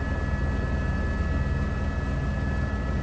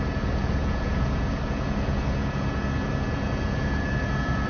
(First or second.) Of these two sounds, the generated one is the second